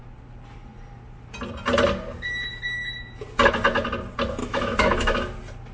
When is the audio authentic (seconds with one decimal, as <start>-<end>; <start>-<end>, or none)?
0.0-4.4; 5.2-5.7